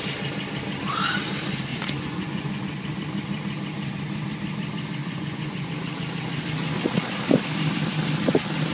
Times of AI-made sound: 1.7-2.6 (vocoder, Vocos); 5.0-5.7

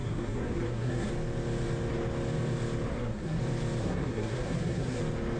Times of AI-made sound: 0.0-1.1 (codec, SNAC); 2.9-3.4; 3.8-5.0